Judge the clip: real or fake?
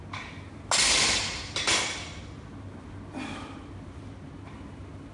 real